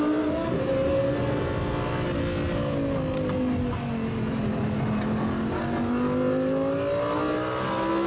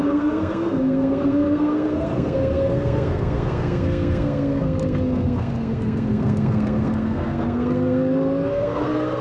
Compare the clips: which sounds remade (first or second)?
second